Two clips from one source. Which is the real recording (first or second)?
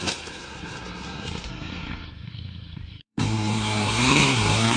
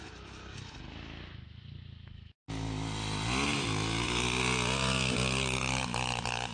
second